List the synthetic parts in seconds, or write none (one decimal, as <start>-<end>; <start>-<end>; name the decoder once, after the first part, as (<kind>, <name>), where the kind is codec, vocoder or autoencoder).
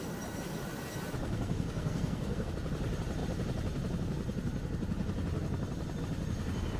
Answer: 1.2-2.5 (codec, SNAC)